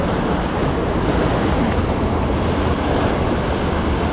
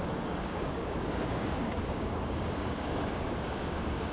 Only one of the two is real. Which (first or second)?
first